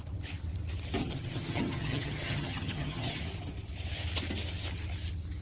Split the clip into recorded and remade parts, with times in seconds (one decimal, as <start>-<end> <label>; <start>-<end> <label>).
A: 0.0-1.0 recorded; 1.0-3.2 remade; 3.2-5.4 recorded